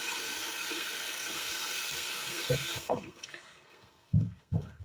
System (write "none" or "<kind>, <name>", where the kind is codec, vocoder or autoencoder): codec, SNAC